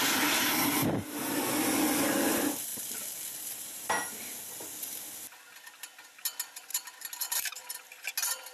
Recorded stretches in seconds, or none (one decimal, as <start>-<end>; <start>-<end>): 0.0-6.7; 7.7-8.5